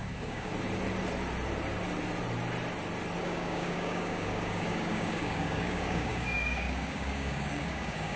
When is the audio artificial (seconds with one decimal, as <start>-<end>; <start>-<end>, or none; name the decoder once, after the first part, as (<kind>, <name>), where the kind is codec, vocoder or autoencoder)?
0.0-0.5 (codec, DAC); 3.2-8.2